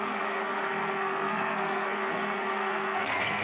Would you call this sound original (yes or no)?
no